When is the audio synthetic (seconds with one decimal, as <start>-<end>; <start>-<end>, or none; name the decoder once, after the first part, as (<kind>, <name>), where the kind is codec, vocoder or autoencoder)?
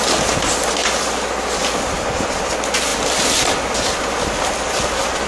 none